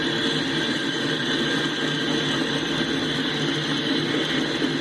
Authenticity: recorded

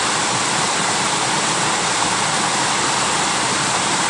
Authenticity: recorded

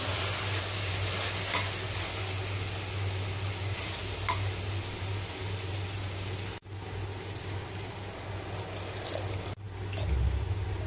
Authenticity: recorded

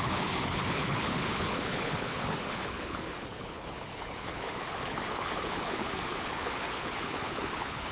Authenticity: remade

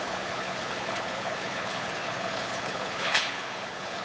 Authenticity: remade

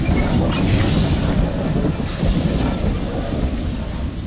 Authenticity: recorded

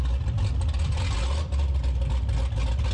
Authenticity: recorded